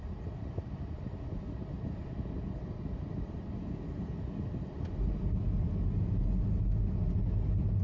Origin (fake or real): real